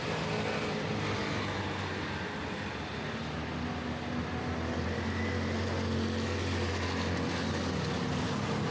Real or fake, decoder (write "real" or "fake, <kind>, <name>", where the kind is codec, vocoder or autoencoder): real